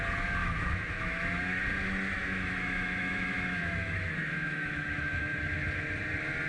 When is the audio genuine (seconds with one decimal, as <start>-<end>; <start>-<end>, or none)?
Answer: 0.0-0.4; 1.6-2.1; 5.4-6.5